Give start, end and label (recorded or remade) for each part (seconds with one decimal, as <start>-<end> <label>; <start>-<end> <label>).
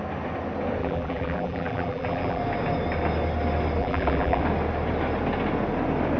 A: 0.0-0.8 recorded; 0.8-2.4 remade; 2.4-3.8 recorded; 3.8-4.4 remade; 4.4-6.2 recorded